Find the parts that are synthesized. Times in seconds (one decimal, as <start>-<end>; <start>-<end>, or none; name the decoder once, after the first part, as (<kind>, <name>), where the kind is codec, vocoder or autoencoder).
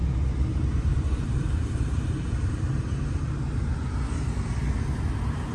0.5-3.8 (vocoder, BigVGAN v2)